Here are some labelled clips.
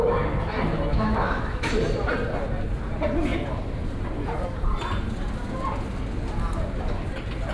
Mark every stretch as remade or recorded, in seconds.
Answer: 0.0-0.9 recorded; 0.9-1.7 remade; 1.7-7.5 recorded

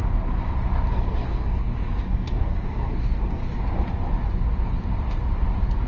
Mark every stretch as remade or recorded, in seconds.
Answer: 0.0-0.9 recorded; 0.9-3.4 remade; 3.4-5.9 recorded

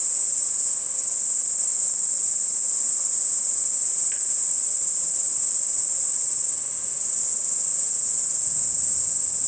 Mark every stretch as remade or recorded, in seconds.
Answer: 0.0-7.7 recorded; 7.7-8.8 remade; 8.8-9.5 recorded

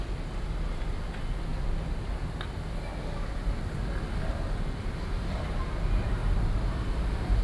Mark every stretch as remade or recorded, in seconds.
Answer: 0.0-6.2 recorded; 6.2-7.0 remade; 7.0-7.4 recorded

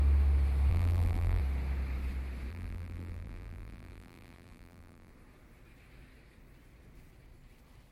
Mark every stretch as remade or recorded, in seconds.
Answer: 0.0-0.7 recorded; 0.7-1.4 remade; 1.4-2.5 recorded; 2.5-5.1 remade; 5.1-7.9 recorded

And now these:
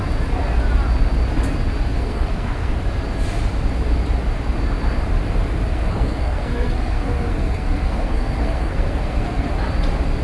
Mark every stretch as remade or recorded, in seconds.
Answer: 0.0-1.9 recorded; 1.9-2.7 remade; 2.7-5.7 recorded; 5.7-9.5 remade; 9.5-10.2 recorded

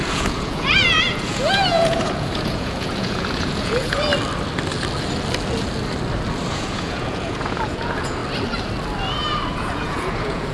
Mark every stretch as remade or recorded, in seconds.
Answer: 0.0-4.1 remade; 4.1-6.5 recorded; 6.5-8.2 remade; 8.2-9.5 recorded; 9.5-10.5 remade

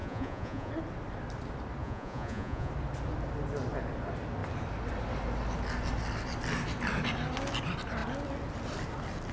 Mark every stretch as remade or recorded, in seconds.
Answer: 0.0-0.7 remade; 0.7-1.8 recorded; 1.8-2.7 remade; 2.7-9.3 recorded